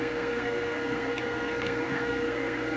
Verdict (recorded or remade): remade